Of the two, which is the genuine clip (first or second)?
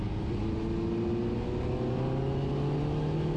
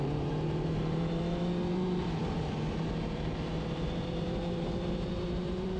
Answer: first